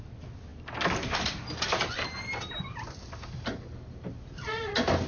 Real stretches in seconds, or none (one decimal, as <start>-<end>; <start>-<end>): 0.0-5.1